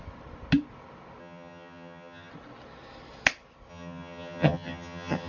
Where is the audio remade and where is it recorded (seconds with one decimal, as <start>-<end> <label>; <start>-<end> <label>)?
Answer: 0.0-1.2 recorded; 1.2-2.3 remade; 2.3-3.7 recorded; 3.7-5.3 remade